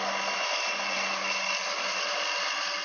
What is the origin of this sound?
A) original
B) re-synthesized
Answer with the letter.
A